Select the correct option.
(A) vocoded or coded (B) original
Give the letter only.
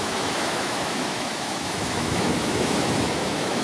A